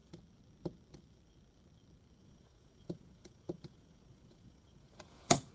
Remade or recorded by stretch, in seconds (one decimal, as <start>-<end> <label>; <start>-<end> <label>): 0.0-2.2 recorded; 2.2-5.5 remade